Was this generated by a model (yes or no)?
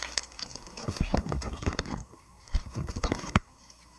yes